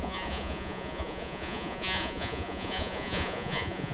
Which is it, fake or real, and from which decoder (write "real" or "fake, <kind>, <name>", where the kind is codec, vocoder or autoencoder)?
fake, vocoder, Vocos